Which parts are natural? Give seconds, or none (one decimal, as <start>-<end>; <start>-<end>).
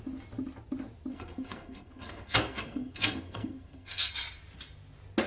0.0-1.1; 4.1-5.3